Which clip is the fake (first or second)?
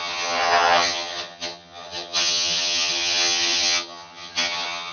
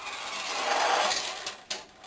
first